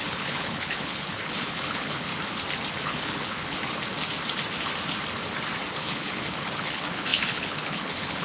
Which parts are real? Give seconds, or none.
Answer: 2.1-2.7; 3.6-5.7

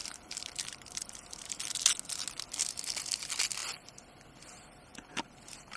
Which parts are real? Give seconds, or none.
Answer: 1.6-4.9

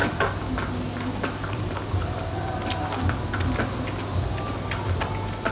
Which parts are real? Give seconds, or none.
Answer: 0.0-5.5

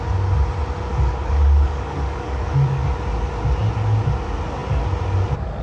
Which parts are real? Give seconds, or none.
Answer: 0.0-0.9; 2.9-5.6

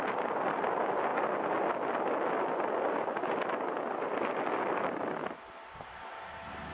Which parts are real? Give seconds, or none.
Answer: 0.0-6.7

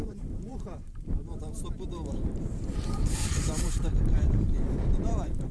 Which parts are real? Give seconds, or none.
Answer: none

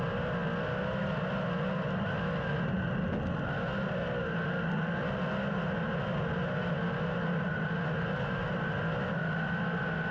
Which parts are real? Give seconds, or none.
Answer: 0.0-10.1

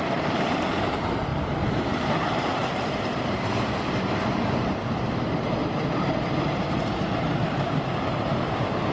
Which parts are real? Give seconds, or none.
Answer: none